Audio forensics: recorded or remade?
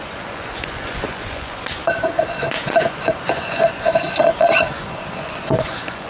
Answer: remade